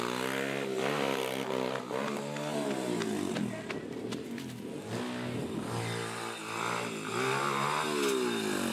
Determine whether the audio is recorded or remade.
recorded